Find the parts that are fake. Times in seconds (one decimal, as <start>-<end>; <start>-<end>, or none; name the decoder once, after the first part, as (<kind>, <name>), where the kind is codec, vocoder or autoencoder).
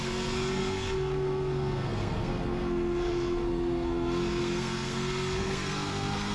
0.0-6.3 (codec, SNAC)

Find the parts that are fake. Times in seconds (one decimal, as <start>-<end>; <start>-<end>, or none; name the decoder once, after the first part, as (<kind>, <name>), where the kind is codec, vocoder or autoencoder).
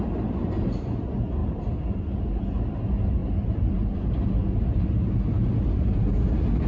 none